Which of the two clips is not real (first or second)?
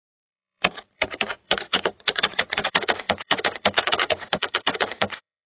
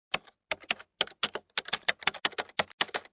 first